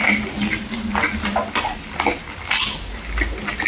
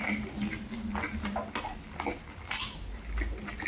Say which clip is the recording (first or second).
second